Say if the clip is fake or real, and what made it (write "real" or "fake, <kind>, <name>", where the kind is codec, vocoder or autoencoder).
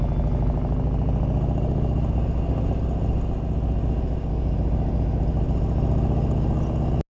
real